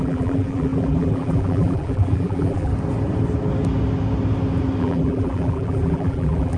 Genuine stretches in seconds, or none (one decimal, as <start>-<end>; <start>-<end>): 2.7-4.8